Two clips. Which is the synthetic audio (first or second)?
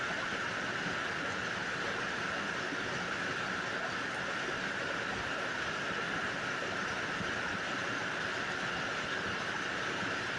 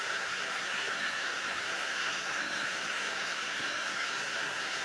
second